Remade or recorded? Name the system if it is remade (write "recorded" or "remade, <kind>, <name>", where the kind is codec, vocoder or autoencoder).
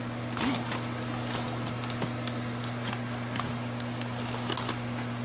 recorded